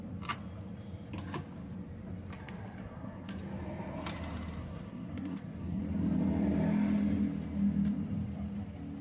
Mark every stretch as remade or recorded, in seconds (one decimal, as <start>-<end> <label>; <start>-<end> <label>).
0.0-2.8 recorded; 2.8-3.3 remade; 3.3-4.6 recorded; 4.6-5.8 remade; 5.8-9.0 recorded